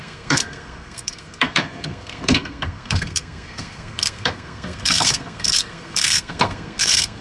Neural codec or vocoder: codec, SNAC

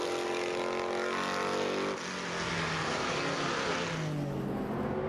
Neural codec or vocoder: none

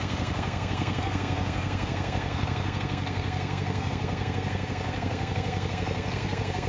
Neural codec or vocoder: codec, SNAC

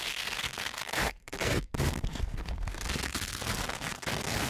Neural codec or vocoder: codec, SNAC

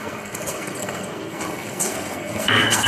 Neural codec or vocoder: codec, SNAC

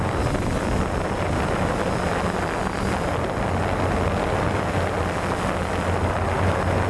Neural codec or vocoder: none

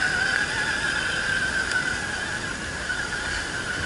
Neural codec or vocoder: none